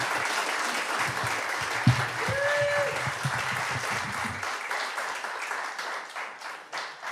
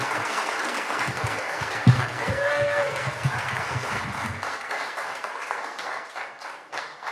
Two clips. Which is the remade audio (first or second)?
second